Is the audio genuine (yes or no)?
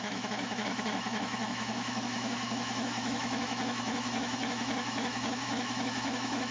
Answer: no